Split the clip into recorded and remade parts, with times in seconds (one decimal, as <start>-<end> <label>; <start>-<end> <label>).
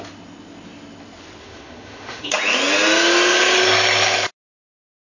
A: 0.0-1.4 recorded; 1.4-2.3 remade; 2.3-5.1 recorded